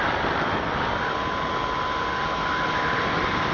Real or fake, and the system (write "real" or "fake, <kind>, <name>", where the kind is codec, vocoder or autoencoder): real